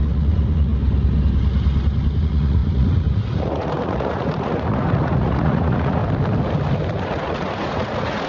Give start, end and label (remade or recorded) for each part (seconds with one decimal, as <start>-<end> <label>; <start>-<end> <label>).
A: 0.0-0.7 remade; 0.7-2.2 recorded; 2.2-6.0 remade; 6.0-7.0 recorded; 7.0-8.3 remade